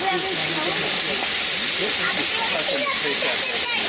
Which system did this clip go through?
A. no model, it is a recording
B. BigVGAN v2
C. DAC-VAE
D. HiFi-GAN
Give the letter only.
A